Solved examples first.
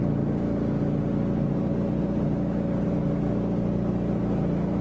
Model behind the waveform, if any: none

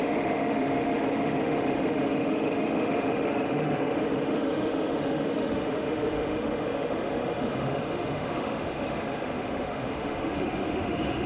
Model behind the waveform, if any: autoencoder, DAC-VAE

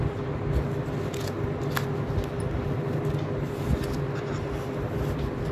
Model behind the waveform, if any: none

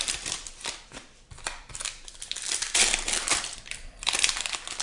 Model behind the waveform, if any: vocoder, BigVGAN v2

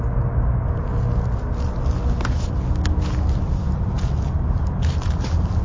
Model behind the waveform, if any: none